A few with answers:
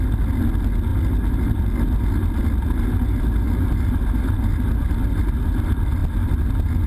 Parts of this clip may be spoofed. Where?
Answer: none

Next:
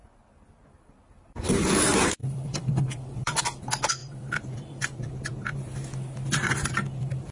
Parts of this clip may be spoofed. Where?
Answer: 2.2-3.4 (vocoder, BigVGAN v2); 4.0-5.6

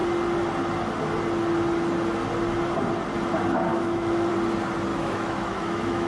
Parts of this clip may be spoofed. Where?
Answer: 3.7-4.3 (autoencoder, DAC-VAE); 4.9-6.1

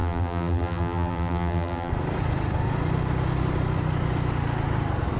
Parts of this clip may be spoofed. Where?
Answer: 0.0-1.9 (vocoder, BigVGAN v2)

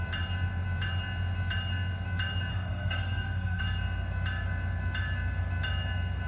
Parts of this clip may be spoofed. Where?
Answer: 2.5-3.6 (codec, SNAC)

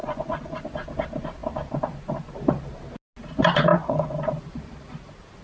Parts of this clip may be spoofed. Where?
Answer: 0.0-0.6 (vocoder, Vocos); 3.7-4.3

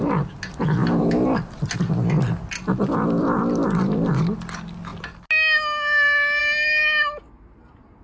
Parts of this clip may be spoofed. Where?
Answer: none